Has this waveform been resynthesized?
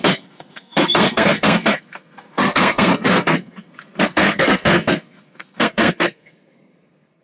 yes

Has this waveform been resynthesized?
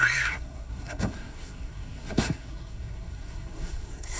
yes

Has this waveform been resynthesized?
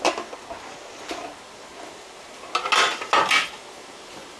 no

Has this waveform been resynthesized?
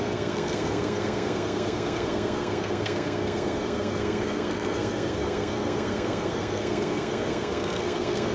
yes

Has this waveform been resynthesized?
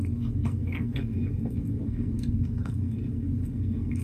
yes